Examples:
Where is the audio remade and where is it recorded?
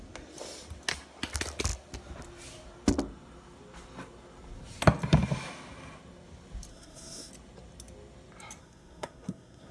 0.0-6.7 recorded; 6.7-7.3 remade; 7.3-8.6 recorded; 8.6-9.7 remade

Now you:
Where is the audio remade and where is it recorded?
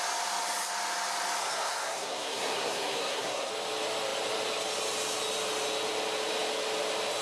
0.0-1.4 recorded; 1.4-3.5 remade; 3.5-7.2 recorded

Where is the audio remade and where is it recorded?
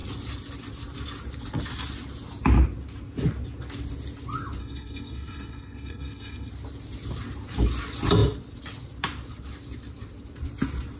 0.0-4.6 recorded; 4.6-6.5 remade; 6.5-11.0 recorded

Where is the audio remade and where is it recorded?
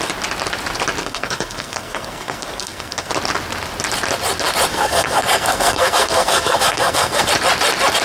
0.0-1.0 recorded; 1.0-3.1 remade; 3.1-4.7 recorded; 4.7-7.3 remade; 7.3-8.0 recorded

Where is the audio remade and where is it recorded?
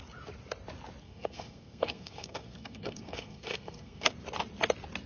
0.0-1.0 recorded; 1.0-4.1 remade; 4.1-5.1 recorded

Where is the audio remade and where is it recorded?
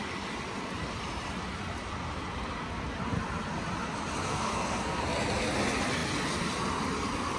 0.0-4.2 recorded; 4.2-5.0 remade; 5.0-7.4 recorded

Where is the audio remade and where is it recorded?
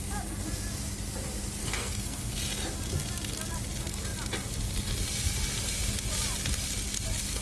0.0-1.6 recorded; 1.6-2.3 remade; 2.3-7.4 recorded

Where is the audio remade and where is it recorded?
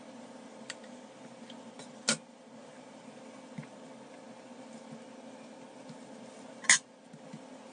0.0-7.7 recorded